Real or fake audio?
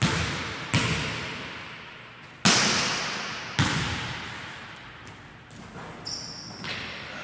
real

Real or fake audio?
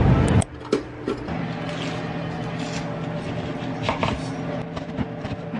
real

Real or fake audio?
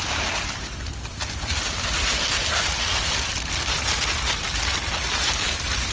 real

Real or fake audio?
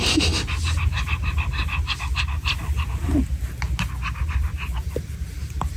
real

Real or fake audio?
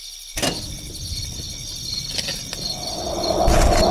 real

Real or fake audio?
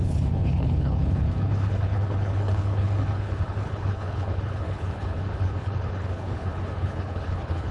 fake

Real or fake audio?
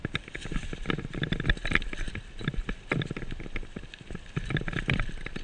real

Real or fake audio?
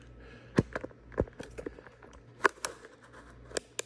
real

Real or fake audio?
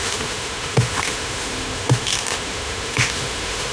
fake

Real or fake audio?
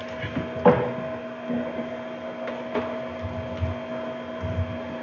real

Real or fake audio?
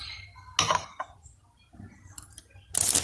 real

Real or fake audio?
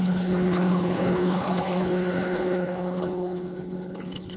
fake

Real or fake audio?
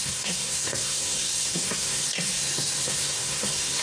fake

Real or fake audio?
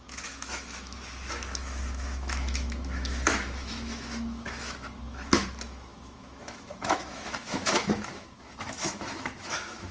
fake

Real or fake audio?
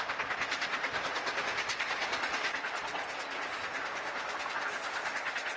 fake